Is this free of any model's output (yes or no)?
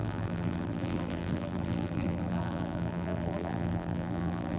no